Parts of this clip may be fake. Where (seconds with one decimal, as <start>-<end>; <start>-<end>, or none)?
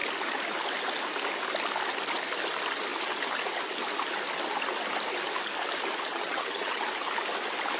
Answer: 6.1-6.8